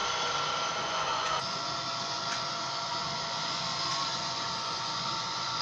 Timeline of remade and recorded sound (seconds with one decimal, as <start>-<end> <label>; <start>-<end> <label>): 0.0-0.7 recorded; 0.7-5.6 remade